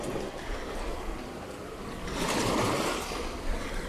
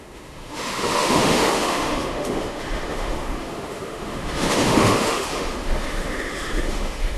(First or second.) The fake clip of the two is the second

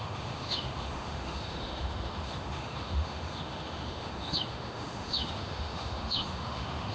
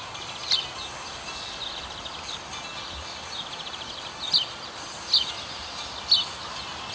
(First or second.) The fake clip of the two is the first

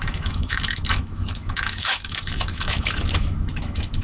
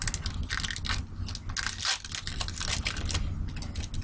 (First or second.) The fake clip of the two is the first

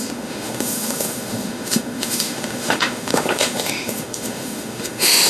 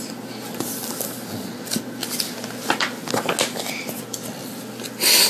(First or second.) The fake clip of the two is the first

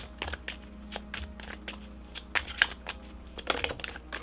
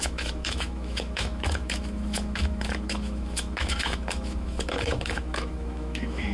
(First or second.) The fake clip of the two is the second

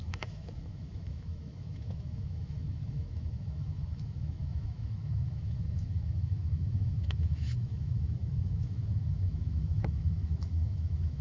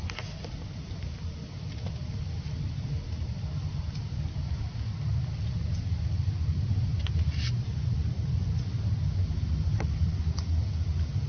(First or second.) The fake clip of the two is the first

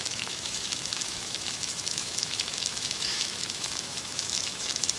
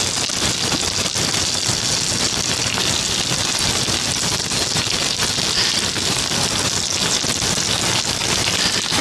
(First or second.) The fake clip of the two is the first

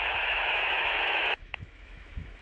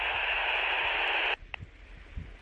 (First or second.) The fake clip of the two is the first